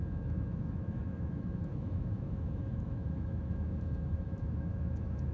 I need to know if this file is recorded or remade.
remade